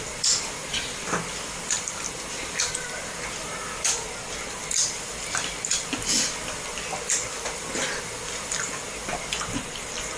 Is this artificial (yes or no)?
yes